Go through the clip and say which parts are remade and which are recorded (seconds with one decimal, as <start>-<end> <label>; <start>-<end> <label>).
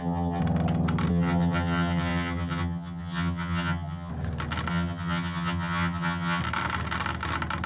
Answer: 0.0-0.4 remade; 0.4-1.1 recorded; 1.1-4.1 remade; 4.1-4.7 recorded; 4.7-6.4 remade; 6.4-7.7 recorded